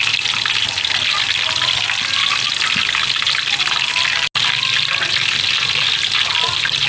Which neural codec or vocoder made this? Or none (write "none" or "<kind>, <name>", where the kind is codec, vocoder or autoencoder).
none